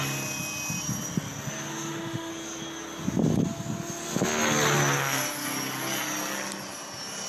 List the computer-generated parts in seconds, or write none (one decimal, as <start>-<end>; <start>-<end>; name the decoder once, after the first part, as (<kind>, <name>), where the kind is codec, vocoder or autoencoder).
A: 1.7-2.3 (autoencoder, DAC-VAE)